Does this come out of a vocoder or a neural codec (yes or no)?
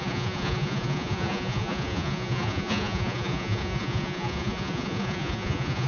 yes